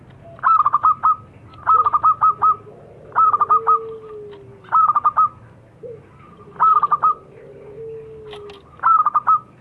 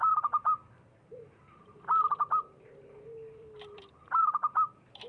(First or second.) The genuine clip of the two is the first